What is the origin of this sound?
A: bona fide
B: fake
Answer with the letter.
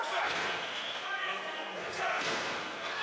B